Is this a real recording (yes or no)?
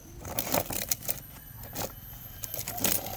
no